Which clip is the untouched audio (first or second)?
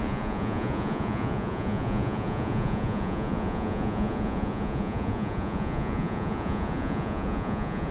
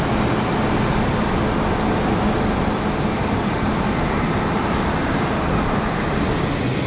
second